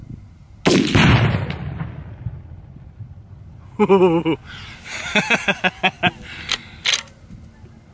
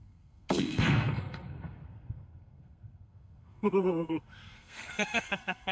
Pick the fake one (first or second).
second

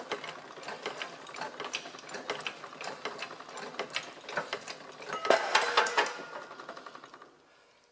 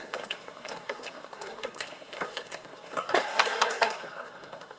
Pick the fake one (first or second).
second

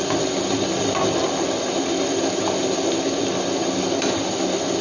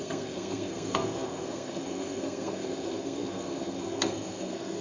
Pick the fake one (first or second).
second